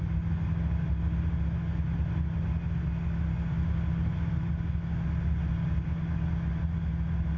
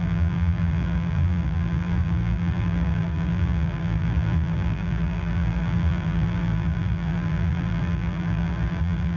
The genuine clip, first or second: first